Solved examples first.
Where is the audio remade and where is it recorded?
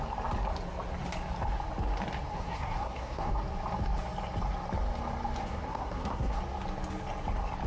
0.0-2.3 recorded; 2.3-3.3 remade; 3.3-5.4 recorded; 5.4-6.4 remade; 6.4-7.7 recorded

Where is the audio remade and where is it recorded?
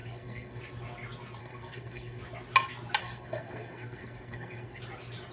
0.0-0.6 remade; 0.6-1.4 recorded; 1.4-2.2 remade; 2.2-3.0 recorded; 3.0-4.8 remade; 4.8-5.3 recorded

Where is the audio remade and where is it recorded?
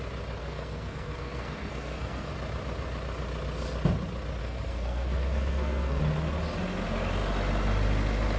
0.0-0.4 recorded; 0.4-2.3 remade; 2.3-4.4 recorded; 4.4-6.0 remade; 6.0-8.4 recorded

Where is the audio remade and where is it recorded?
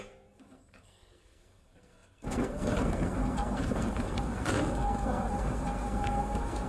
0.0-6.7 remade